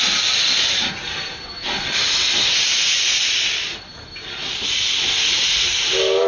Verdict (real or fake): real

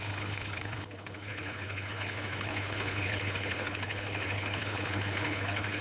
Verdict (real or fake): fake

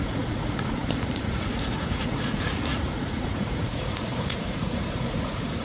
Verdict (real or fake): fake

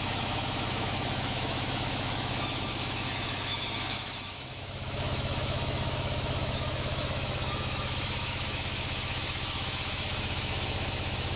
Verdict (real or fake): fake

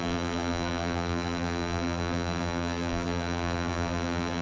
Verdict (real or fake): fake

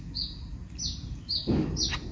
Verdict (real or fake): real